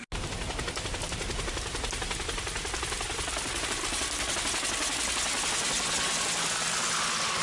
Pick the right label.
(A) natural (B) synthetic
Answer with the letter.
A